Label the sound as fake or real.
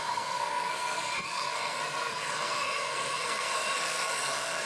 fake